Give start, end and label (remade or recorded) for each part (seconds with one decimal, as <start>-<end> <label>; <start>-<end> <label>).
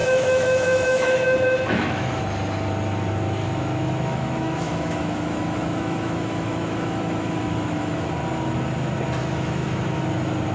0.0-2.2 remade; 2.2-3.4 recorded; 3.4-8.1 remade; 8.1-9.2 recorded; 9.2-10.0 remade; 10.0-10.5 recorded